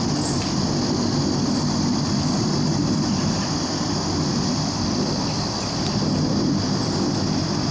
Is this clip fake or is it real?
real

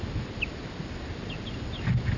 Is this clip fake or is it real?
real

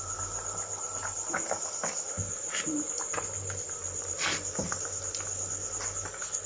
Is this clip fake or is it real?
real